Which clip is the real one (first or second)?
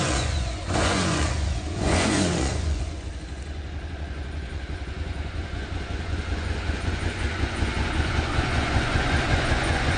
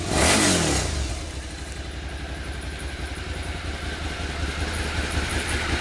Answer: second